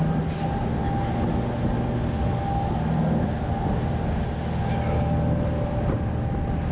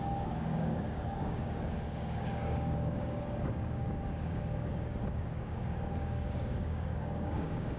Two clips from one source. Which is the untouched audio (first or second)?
first